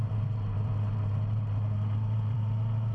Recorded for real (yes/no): no